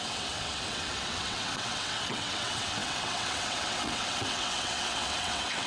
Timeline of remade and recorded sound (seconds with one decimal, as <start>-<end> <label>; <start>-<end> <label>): 0.0-5.7 remade